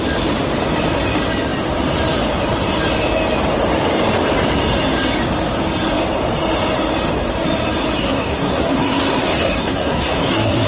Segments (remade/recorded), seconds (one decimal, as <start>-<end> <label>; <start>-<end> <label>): 0.0-8.0 recorded; 8.0-10.7 remade